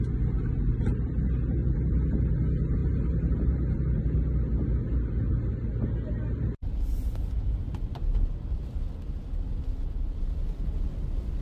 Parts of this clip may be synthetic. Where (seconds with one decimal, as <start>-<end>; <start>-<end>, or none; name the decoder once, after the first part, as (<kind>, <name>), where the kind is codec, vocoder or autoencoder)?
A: 2.8-3.8 (vocoder, BigVGAN v2)